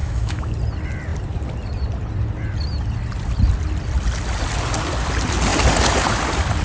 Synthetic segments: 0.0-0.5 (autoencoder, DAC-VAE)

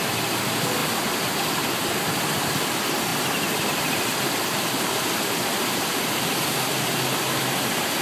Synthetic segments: 3.1-8.0 (vocoder, BigVGAN v2)

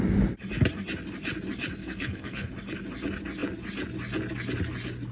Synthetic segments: 1.8-2.5 (codec, SNAC)

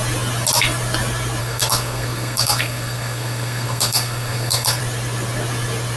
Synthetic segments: 1.4-4.8 (codec, SNAC)

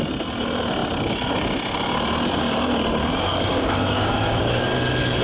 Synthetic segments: 3.3-4.7 (codec, DAC)

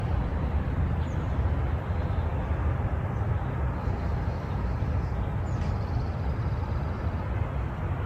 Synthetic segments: none